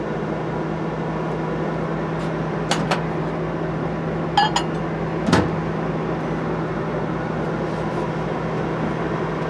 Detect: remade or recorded recorded